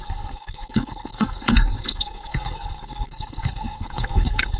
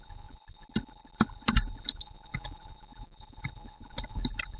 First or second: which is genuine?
second